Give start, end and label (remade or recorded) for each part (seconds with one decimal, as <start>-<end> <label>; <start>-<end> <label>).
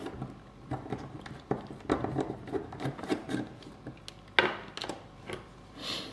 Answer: 0.0-2.6 recorded; 2.6-4.0 remade; 4.0-6.1 recorded